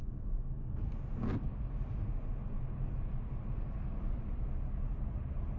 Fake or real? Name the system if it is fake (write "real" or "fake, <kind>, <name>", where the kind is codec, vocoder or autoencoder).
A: real